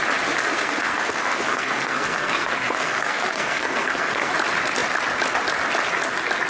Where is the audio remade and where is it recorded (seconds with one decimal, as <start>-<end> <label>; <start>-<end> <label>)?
0.0-0.4 recorded; 0.4-4.3 remade; 4.3-6.5 recorded